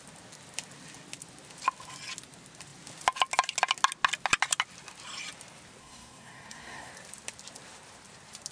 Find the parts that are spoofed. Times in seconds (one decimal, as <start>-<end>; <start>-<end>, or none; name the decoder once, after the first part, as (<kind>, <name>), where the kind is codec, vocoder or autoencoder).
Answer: 5.8-6.9 (codec, SNAC)